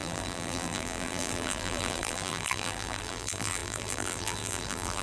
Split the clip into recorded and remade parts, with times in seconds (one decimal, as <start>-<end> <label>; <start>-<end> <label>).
0.0-5.0 remade